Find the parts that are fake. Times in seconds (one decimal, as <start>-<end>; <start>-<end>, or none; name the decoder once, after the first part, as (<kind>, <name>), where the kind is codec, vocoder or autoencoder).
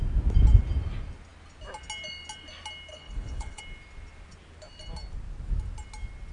2.9-3.6 (codec, HILCodec)